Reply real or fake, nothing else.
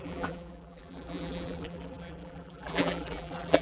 fake